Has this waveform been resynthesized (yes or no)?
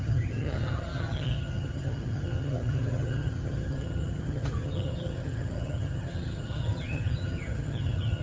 yes